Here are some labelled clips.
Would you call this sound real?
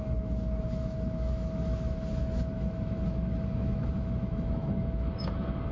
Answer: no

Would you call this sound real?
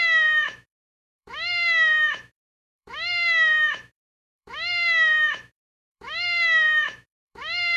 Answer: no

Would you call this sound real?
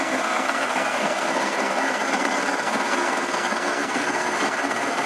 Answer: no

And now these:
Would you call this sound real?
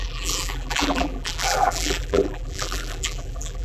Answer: no